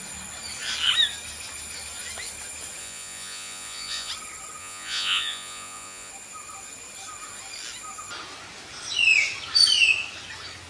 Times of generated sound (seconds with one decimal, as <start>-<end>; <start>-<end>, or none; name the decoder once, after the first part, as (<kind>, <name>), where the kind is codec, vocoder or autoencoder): 2.8-4.1 (vocoder, Vocos); 4.6-6.1